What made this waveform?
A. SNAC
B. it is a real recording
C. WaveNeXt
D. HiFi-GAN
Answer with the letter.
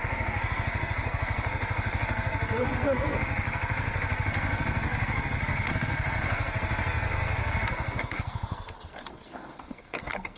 A